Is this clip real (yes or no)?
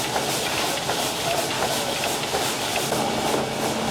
yes